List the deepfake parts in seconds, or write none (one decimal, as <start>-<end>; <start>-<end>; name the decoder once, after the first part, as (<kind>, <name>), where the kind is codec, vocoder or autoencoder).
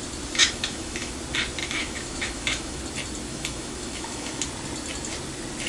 0.4-1.1 (autoencoder, DAC-VAE); 1.6-2.8; 3.3-4.4